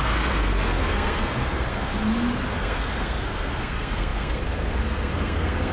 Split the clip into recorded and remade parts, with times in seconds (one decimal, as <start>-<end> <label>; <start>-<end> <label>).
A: 0.0-1.9 remade; 1.9-2.5 recorded; 2.5-5.7 remade